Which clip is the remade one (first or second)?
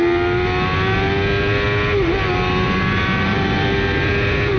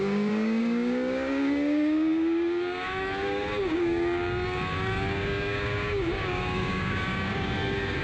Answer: second